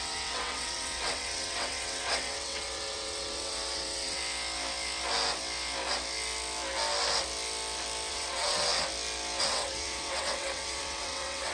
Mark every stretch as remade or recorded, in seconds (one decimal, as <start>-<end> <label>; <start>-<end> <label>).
0.0-4.2 remade; 4.2-8.1 recorded; 8.1-8.7 remade; 8.7-9.4 recorded; 9.4-11.5 remade